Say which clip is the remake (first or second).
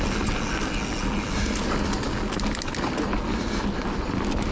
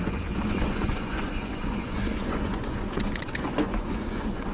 second